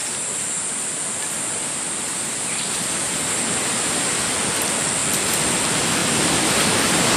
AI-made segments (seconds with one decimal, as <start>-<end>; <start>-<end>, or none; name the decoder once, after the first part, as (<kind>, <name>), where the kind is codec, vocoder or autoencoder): 0.0-4.3 (vocoder, BigVGAN v2); 6.0-7.2